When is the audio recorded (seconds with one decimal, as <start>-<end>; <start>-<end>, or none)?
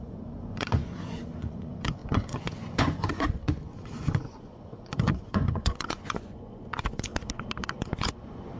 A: 7.1-7.7